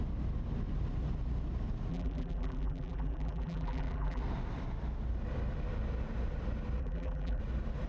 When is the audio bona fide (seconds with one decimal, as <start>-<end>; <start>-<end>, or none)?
0.0-1.9; 4.2-6.8; 7.4-7.9